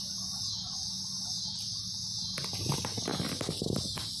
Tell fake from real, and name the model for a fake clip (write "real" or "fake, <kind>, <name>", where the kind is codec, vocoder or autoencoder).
real